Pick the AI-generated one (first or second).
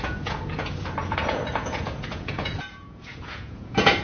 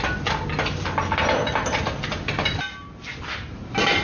first